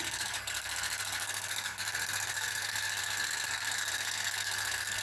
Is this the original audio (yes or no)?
no